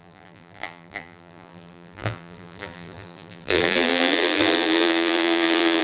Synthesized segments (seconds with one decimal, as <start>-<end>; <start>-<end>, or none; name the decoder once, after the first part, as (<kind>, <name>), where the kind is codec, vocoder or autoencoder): 0.0-5.8 (vocoder, BigVGAN v2)